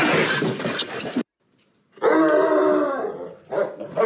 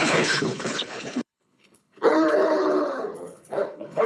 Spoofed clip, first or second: second